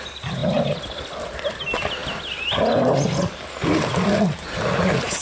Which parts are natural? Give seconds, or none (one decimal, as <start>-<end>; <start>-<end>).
0.0-5.2